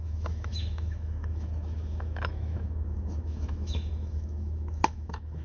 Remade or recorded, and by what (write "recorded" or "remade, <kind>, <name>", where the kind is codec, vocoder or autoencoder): remade, autoencoder, DAC-VAE